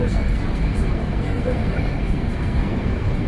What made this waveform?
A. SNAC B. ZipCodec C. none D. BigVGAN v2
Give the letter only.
A